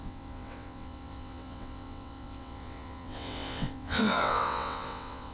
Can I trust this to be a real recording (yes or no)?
no